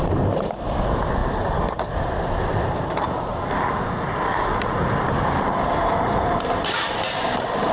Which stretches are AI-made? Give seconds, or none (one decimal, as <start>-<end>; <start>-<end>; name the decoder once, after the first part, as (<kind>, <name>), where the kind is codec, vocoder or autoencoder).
0.0-3.3 (vocoder, BigVGAN v2); 5.1-7.7

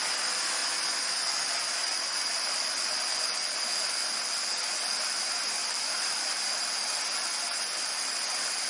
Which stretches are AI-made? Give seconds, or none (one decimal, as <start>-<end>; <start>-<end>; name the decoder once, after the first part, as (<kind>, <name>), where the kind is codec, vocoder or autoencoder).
5.6-6.5 (vocoder, BigVGAN v2)

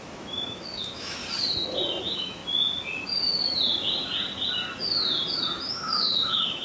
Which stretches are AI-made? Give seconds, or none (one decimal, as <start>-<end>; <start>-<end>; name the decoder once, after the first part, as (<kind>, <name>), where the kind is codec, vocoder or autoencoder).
0.0-1.2 (autoencoder, DAC-VAE); 2.0-2.4; 5.7-6.6

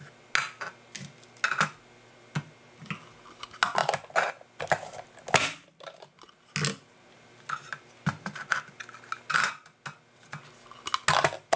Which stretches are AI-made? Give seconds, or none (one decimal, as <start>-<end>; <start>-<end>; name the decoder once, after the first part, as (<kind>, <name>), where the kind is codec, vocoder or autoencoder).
none

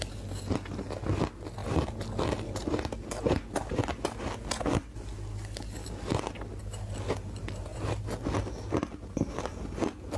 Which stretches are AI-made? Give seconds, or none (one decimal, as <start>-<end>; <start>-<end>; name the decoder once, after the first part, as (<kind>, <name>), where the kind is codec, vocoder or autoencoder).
none

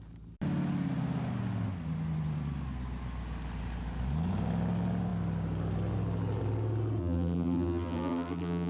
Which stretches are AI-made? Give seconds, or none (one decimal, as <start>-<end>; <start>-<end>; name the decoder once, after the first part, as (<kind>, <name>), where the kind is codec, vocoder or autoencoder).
7.0-8.7 (vocoder, BigVGAN v2)

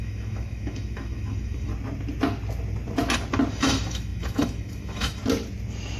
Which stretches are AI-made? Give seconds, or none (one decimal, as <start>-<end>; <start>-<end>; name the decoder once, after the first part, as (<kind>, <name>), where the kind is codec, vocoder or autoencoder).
0.0-1.7 (autoencoder, DAC-VAE); 3.5-5.2

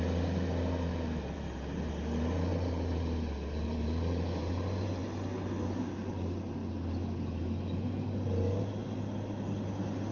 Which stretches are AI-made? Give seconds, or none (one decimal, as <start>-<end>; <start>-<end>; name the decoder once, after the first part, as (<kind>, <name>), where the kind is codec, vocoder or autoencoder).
0.9-1.9 (vocoder, BigVGAN v2); 2.5-5.0